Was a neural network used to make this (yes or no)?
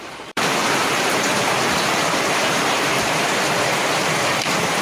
yes